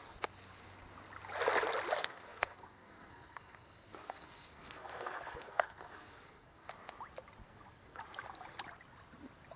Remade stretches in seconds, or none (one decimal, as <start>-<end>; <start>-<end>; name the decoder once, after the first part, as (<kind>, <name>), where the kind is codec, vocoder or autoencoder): 2.0-6.7 (codec, SNAC); 7.4-8.0